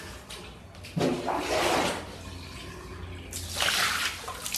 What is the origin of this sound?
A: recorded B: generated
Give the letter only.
A